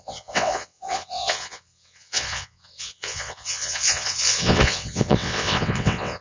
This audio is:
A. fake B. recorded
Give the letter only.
A